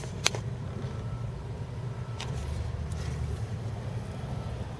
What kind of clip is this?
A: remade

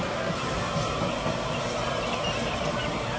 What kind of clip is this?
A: recorded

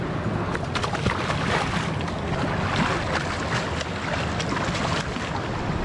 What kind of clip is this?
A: recorded